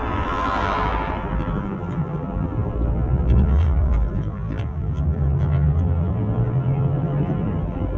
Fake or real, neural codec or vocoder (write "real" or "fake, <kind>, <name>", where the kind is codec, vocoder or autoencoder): fake, vocoder, BigVGAN v2